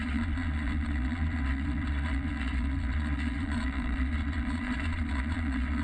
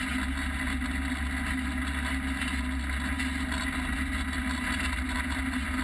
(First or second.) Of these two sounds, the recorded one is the second